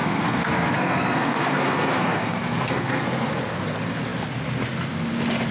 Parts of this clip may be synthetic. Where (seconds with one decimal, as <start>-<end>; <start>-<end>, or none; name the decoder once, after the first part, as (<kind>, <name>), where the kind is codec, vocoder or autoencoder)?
0.0-3.3 (codec, SNAC)